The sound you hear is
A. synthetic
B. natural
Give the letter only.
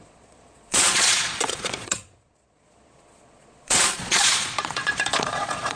A